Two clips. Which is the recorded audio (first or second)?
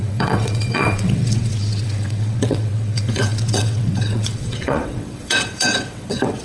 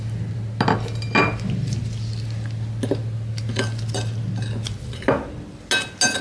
second